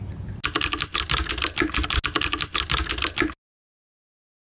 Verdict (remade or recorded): recorded